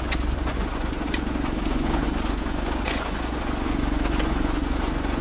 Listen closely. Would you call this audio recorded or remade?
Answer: remade